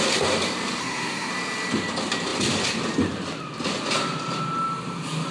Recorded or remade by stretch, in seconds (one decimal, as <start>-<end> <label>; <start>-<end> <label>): 0.0-0.8 recorded; 0.8-1.3 remade; 1.3-5.3 recorded